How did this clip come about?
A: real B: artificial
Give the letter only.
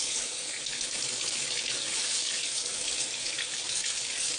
B